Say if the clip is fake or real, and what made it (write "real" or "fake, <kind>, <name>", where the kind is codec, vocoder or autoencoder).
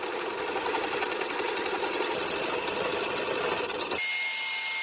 real